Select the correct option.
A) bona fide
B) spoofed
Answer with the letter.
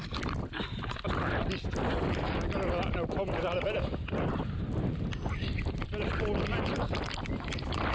A